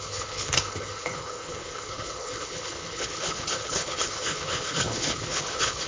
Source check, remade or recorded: remade